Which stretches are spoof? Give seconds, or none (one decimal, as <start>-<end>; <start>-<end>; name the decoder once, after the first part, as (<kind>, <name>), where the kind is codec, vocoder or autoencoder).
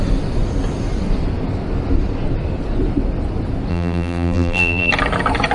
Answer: 3.7-4.9 (vocoder, BigVGAN v2)